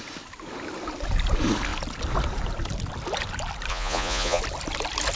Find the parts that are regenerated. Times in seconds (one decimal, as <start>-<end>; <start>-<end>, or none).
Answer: 3.7-4.4